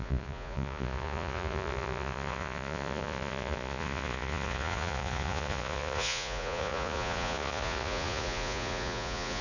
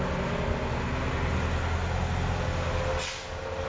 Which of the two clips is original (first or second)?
second